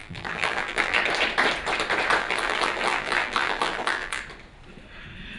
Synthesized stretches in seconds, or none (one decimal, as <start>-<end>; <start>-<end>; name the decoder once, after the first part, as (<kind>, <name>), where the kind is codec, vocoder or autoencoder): 0.0-1.0 (vocoder, BigVGAN v2); 2.2-4.2